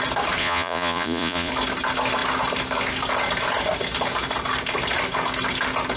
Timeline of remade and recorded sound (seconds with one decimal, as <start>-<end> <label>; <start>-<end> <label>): 0.0-0.4 recorded; 0.4-1.5 remade; 1.5-6.0 recorded